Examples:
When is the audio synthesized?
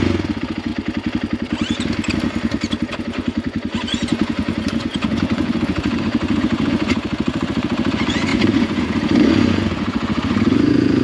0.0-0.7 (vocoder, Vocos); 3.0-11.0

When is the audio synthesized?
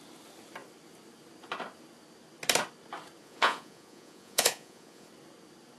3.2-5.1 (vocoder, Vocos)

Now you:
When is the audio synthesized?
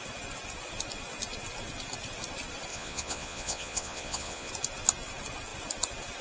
2.7-4.5 (vocoder, Vocos)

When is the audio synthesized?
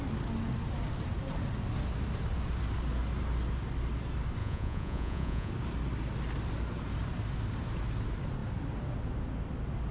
4.4-5.5 (vocoder, Vocos)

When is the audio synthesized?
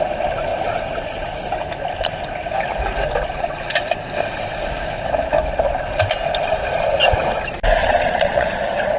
7.8-8.6 (vocoder, Vocos)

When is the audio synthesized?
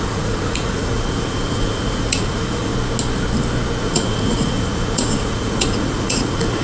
0.0-2.7 (vocoder, Vocos); 3.8-6.6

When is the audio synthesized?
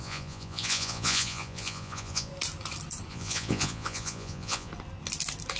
0.0-2.3 (vocoder, Vocos); 3.1-4.7